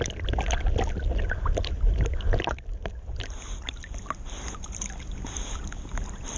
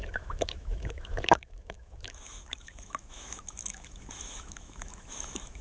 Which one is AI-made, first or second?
second